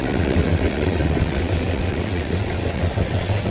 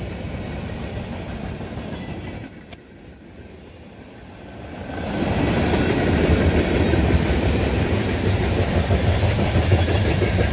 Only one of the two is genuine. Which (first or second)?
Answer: second